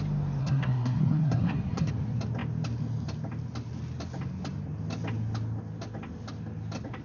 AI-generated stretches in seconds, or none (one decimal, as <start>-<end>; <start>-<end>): 0.4-1.9